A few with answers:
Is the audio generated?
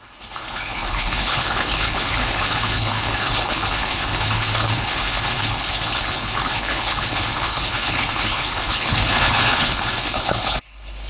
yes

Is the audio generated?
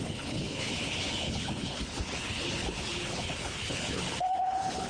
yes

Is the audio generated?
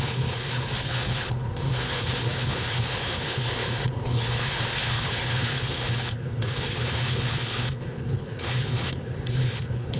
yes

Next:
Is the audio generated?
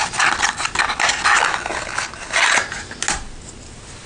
no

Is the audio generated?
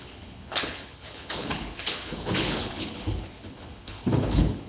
yes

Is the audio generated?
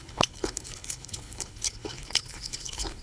yes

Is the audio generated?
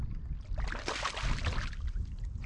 no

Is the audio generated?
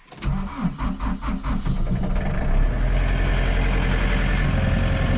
no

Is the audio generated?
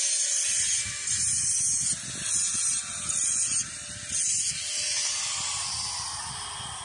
no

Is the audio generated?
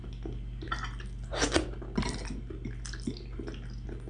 no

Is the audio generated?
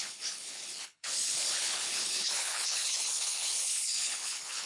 yes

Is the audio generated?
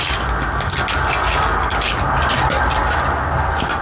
no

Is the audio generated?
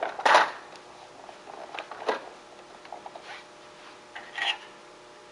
no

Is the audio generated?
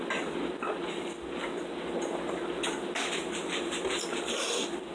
no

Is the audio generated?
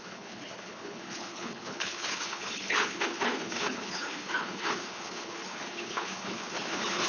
yes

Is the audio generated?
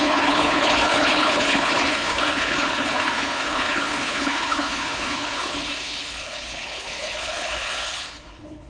yes